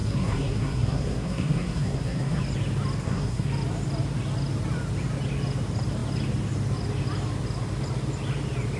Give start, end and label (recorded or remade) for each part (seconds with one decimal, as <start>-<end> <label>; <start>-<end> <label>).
0.0-2.4 remade; 2.4-3.0 recorded; 3.0-3.5 remade; 3.5-8.8 recorded